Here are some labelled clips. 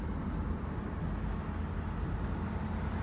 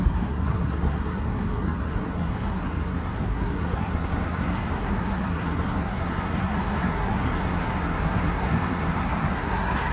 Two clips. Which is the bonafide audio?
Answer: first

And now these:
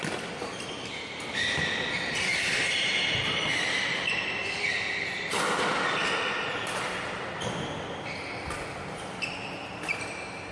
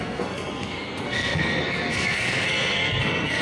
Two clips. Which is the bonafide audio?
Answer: first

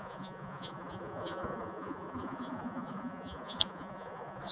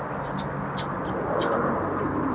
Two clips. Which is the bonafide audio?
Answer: second